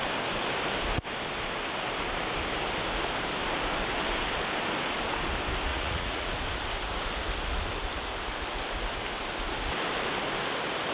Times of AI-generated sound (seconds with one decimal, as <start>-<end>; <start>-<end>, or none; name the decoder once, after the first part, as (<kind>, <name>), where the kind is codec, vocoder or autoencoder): 5.7-6.3 (vocoder, Vocos)